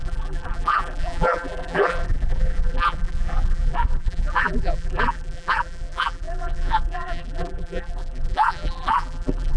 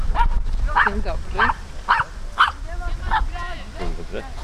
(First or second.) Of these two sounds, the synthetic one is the first